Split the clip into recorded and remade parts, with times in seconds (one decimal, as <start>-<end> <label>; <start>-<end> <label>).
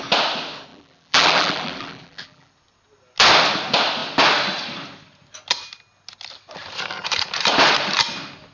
0.0-0.7 recorded; 0.7-2.5 remade; 2.5-8.5 recorded